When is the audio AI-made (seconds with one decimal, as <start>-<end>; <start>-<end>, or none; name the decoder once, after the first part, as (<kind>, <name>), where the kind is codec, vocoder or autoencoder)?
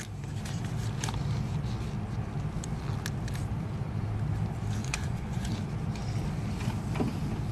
4.8-5.5 (vocoder, Vocos)